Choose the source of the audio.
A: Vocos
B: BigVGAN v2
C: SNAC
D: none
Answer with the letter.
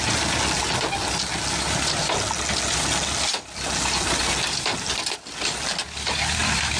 D